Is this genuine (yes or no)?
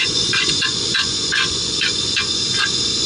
no